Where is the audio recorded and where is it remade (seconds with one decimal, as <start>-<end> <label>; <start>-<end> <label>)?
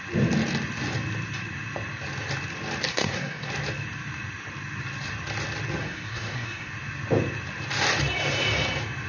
0.0-2.9 recorded; 2.9-3.5 remade; 3.5-5.8 recorded; 5.8-6.7 remade; 6.7-9.1 recorded